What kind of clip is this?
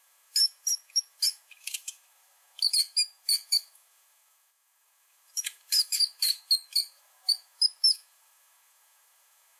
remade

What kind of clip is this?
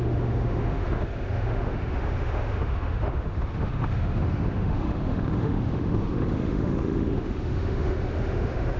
remade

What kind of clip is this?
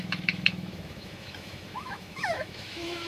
remade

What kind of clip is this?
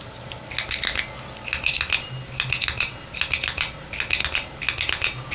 recorded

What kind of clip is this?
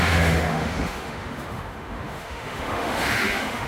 remade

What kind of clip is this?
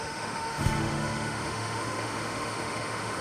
remade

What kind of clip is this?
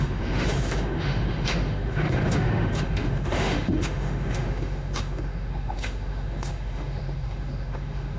remade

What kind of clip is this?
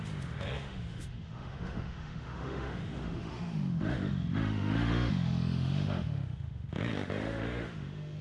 remade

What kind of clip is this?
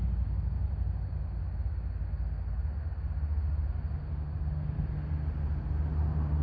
recorded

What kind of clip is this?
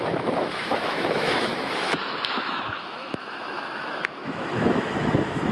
remade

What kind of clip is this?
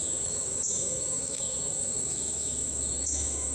remade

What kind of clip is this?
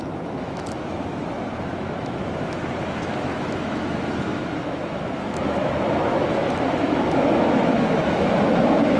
remade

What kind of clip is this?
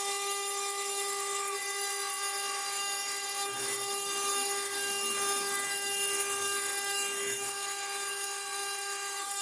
remade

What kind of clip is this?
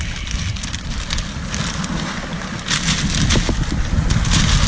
recorded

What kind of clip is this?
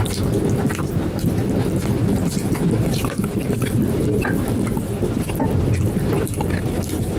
recorded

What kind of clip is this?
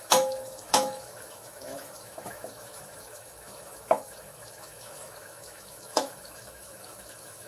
remade